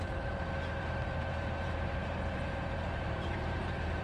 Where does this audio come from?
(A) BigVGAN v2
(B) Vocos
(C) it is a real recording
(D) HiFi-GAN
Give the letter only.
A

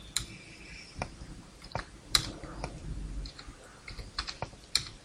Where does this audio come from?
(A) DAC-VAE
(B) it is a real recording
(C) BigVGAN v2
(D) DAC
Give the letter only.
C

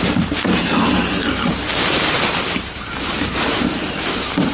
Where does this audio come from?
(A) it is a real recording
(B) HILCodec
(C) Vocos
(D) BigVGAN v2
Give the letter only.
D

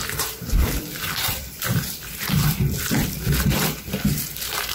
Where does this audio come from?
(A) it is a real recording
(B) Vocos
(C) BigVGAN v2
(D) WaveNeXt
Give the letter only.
C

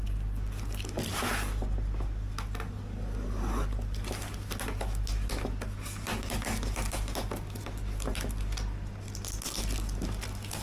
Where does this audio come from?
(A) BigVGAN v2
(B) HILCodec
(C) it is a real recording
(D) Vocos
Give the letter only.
C